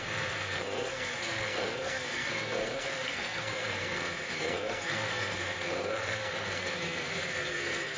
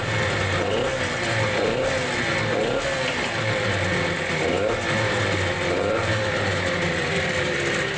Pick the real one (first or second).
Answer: second